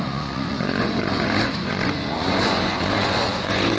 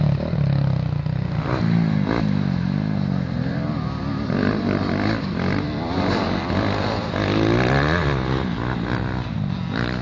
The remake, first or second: first